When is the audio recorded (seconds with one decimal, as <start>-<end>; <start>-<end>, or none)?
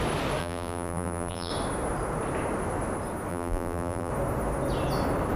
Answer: 0.0-0.4; 1.5-3.3; 4.1-5.4